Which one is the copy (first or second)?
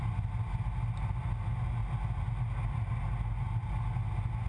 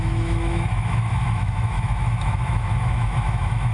second